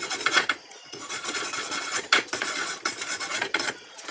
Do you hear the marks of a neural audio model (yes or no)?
yes